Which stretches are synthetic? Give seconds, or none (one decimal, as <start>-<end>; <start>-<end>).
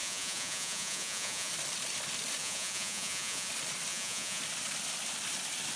0.0-1.5; 2.4-3.5; 3.9-4.4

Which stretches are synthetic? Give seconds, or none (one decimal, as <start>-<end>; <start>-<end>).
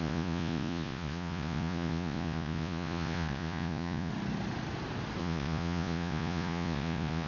0.0-4.1; 5.2-7.3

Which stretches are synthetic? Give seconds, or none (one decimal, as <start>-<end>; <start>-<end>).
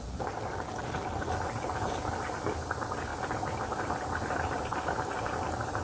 none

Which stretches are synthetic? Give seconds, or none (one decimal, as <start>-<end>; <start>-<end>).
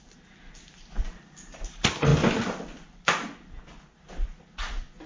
none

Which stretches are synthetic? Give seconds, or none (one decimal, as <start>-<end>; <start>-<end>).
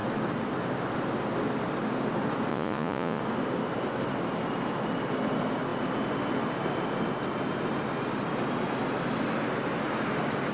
2.5-3.2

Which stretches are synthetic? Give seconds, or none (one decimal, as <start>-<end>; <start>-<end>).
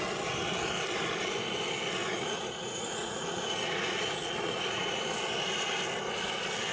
2.0-5.0